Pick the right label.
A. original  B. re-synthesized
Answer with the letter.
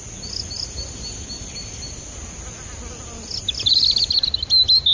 A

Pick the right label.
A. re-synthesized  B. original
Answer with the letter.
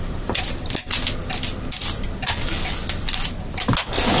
B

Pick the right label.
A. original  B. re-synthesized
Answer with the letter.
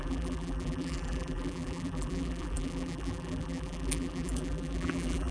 B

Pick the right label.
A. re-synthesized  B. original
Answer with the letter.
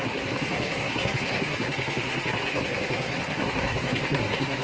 A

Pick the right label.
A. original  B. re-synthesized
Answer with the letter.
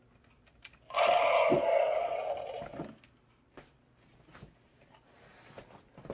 A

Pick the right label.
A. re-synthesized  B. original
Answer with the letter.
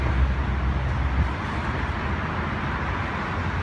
B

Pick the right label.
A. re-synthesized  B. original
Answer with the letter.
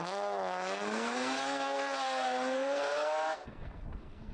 A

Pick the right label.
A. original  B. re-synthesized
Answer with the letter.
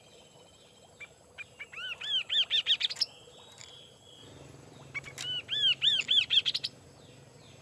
A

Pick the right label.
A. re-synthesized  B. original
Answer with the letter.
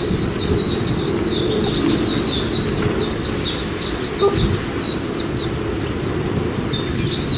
B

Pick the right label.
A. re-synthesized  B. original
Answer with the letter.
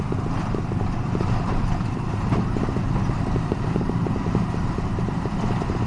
B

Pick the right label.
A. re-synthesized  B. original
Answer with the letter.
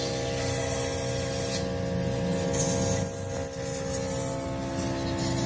B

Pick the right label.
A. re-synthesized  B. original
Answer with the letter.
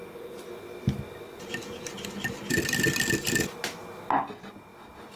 B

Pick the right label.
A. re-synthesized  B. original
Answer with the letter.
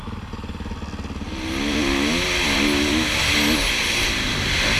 B